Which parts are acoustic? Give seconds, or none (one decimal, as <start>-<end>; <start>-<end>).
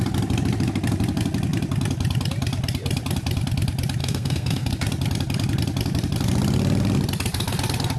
0.0-4.0; 4.7-8.0